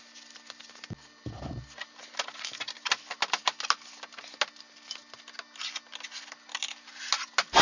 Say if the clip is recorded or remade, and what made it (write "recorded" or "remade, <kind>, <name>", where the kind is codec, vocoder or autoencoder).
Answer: recorded